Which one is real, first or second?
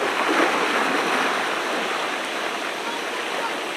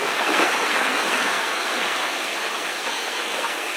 first